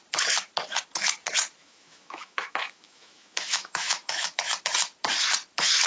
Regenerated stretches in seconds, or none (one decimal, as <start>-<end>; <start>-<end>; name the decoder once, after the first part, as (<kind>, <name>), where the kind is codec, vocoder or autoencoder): 1.6-4.4 (autoencoder, DAC-VAE)